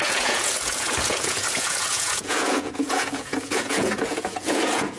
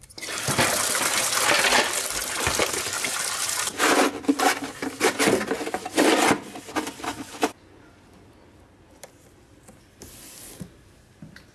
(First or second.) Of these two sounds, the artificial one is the first